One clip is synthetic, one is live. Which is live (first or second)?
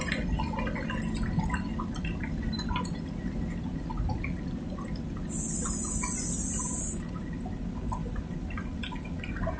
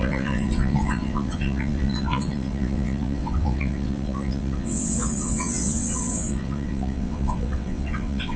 first